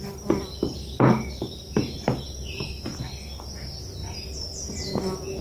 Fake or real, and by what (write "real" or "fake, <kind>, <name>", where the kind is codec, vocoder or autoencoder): real